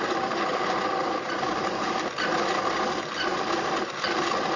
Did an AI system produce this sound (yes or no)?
no